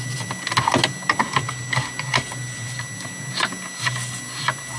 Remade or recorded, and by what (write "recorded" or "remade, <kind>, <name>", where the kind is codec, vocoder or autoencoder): recorded